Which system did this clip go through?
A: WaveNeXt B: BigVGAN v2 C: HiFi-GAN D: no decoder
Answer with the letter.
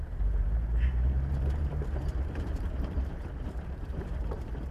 B